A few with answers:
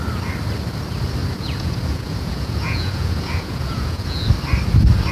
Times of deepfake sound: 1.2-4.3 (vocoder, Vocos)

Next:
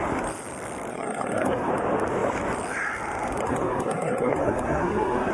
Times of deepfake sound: 0.9-1.7 (codec, SNAC); 3.4-5.3

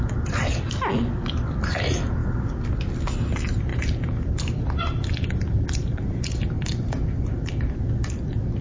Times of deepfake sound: 3.7-7.7 (vocoder, BigVGAN v2)

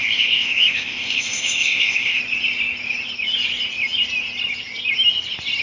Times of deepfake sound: 0.0-2.2 (codec, ZipCodec)

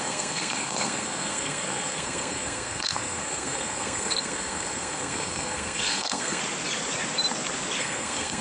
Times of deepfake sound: 0.0-6.4 (codec, SNAC); 7.8-8.4